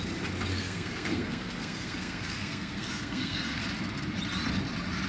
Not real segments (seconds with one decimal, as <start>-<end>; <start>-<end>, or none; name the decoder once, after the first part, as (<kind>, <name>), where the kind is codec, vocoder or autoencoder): 0.5-3.6 (codec, SNAC)